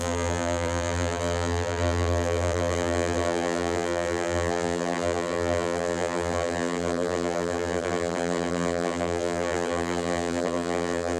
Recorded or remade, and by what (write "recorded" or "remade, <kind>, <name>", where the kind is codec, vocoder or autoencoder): remade, vocoder, BigVGAN v2